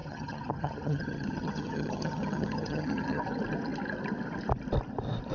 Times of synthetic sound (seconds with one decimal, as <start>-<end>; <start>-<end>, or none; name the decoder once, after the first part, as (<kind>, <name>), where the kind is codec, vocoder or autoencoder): 0.0-3.2 (vocoder, HiFi-GAN)